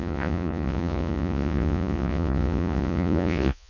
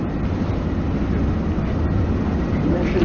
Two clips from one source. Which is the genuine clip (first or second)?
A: second